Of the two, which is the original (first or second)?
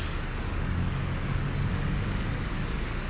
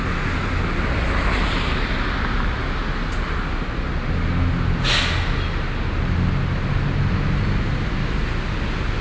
second